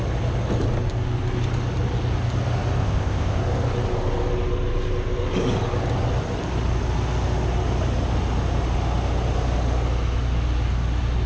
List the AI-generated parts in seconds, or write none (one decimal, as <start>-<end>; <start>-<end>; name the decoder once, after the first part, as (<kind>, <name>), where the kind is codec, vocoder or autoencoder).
2.8-3.4 (codec, ZipCodec)